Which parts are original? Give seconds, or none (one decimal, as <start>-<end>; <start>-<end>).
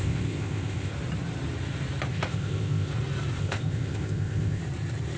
0.9-2.1; 2.9-3.4; 4.6-5.2